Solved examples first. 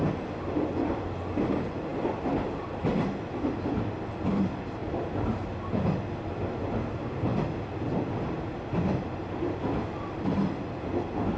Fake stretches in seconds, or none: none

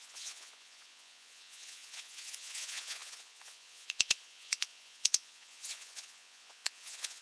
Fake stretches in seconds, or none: 0.0-7.2 (vocoder, Vocos)

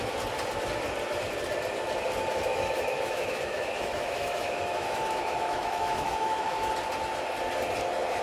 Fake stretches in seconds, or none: 2.5-6.7 (autoencoder, DAC-VAE)

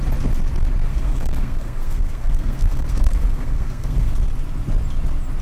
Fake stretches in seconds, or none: 0.9-4.1 (codec, SNAC)

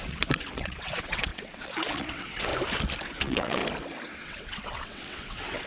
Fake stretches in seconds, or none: 0.0-2.5 (vocoder, WaveNeXt); 3.0-3.6; 4.2-5.7

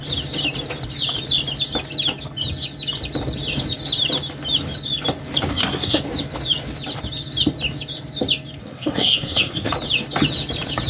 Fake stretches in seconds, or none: 5.5-6.0 (codec, SNAC); 8.6-9.7